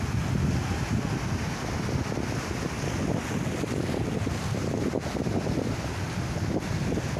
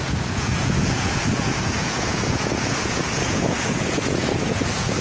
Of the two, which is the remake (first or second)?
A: second